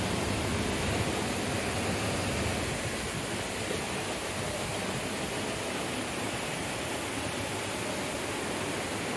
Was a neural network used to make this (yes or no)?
no